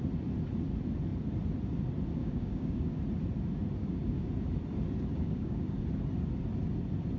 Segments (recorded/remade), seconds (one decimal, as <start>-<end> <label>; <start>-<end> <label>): 0.0-2.2 recorded; 2.2-3.0 remade; 3.0-3.8 recorded; 3.8-4.3 remade; 4.3-5.1 recorded; 5.1-5.8 remade; 5.8-7.2 recorded